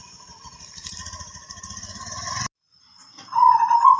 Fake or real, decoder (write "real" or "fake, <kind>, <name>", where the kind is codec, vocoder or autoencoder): real